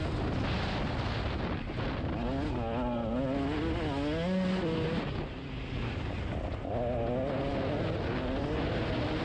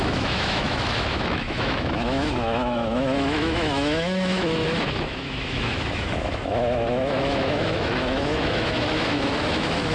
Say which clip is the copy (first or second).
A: second